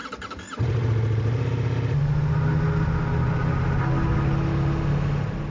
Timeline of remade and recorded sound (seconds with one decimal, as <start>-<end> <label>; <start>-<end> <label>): 0.0-5.5 recorded